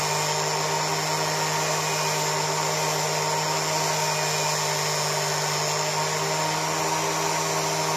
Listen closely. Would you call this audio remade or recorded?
recorded